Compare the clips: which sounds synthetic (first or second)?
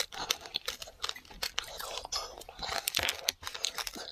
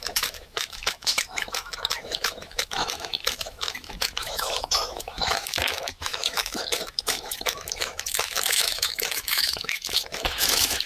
second